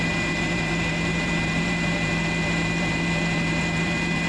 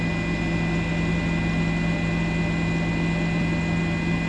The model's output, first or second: first